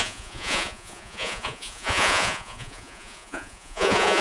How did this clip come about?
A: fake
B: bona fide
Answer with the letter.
A